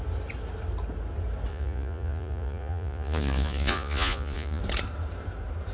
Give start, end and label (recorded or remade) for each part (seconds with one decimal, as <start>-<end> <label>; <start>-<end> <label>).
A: 0.0-1.5 recorded; 1.5-4.6 remade; 4.6-5.7 recorded